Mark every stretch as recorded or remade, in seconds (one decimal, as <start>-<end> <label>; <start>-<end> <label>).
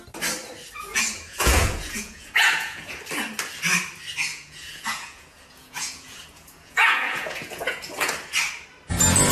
0.0-0.9 recorded; 0.9-3.0 remade; 3.0-4.3 recorded; 4.3-8.1 remade; 8.1-9.3 recorded